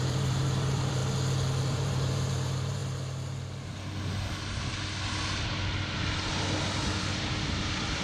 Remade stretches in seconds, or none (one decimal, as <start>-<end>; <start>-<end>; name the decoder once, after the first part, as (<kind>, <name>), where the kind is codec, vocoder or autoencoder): 0.0-1.0 (vocoder, BigVGAN v2); 1.7-2.8; 7.6-8.0

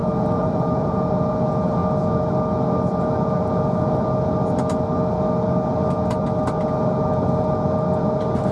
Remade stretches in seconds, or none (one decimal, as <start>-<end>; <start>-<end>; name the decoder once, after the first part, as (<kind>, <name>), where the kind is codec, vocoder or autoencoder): 0.0-1.2 (vocoder, BigVGAN v2)

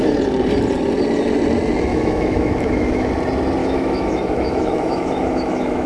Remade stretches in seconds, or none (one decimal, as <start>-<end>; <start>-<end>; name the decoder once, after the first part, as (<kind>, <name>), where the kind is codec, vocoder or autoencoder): 1.9-3.1 (autoencoder, DAC-VAE); 3.6-5.9

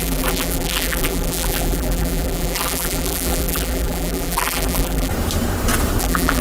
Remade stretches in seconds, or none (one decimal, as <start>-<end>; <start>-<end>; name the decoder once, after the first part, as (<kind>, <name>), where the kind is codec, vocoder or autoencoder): 0.0-5.1 (vocoder, BigVGAN v2); 6.0-6.4